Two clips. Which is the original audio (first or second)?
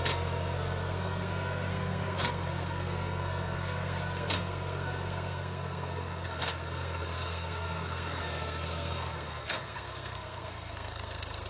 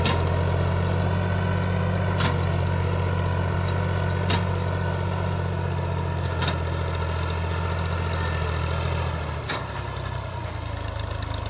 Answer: second